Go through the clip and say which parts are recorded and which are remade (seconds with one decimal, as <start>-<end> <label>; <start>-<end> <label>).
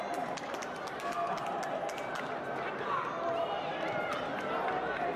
0.0-5.2 recorded